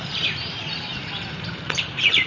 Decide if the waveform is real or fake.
fake